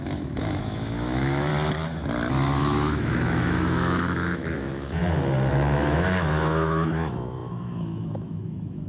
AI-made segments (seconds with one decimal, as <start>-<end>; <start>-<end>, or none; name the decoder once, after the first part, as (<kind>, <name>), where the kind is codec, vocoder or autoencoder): 0.0-1.5 (autoencoder, DAC-VAE); 2.6-5.0; 5.5-8.9